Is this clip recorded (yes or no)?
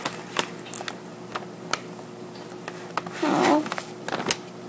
yes